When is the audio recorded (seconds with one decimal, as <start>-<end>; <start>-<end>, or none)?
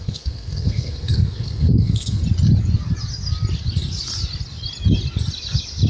2.2-5.9